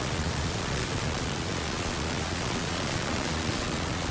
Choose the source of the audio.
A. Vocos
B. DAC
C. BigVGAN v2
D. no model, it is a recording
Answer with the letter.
A